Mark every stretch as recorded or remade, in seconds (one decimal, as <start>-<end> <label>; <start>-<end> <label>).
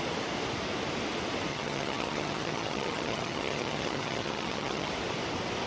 0.0-1.5 recorded; 1.5-4.9 remade; 4.9-5.7 recorded